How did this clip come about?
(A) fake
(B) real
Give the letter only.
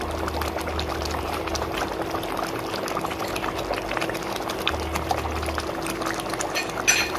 B